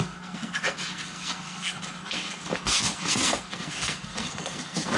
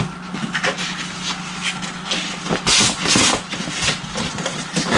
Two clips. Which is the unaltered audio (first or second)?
second